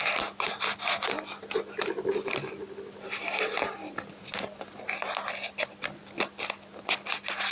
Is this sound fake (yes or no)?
no